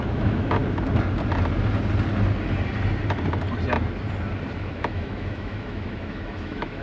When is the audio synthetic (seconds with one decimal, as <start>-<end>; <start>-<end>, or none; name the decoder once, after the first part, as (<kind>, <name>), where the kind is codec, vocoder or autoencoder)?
0.0-0.6 (autoencoder, DAC-VAE); 4.6-6.8